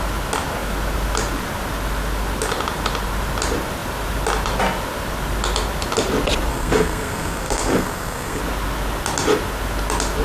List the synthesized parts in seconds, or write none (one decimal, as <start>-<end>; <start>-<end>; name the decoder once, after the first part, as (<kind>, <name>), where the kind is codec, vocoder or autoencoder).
6.5-8.4 (codec, SNAC)